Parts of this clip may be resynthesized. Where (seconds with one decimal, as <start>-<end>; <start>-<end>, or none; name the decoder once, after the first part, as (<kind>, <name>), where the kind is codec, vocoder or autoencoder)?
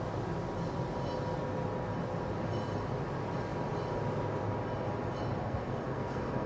5.4-6.5 (codec, SNAC)